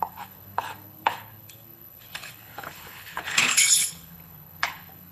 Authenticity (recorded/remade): remade